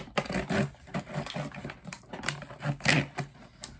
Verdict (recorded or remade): recorded